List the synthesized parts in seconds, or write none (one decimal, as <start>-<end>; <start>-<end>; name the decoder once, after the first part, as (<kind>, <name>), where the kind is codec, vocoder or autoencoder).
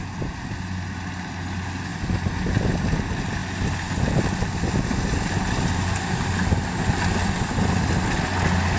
none